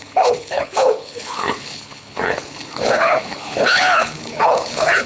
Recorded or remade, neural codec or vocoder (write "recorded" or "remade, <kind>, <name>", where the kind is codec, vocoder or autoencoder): remade, codec, HILCodec